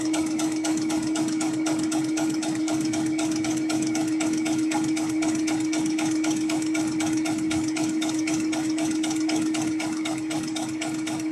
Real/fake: fake